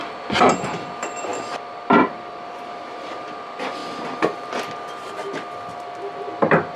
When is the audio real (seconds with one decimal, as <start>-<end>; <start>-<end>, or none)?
1.3-2.8; 3.8-5.7